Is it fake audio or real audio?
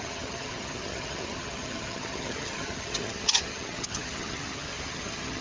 fake